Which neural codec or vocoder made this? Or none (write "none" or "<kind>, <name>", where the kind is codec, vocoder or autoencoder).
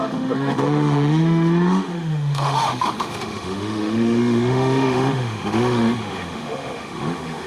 autoencoder, DAC-VAE